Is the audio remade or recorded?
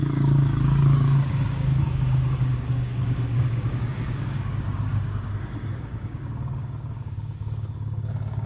remade